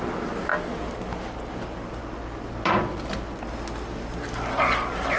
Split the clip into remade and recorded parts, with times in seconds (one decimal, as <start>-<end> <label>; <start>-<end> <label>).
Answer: 0.0-5.2 recorded